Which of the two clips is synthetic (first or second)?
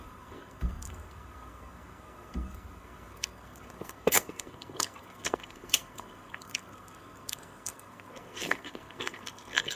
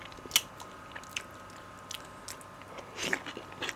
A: first